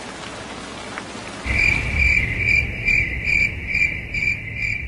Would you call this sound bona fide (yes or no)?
no